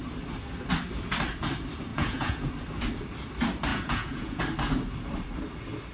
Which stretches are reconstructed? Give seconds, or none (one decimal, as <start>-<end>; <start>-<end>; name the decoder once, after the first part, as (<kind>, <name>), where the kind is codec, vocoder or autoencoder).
1.9-2.5 (vocoder, Vocos); 3.7-4.4